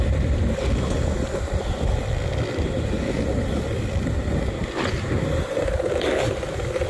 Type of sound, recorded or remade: recorded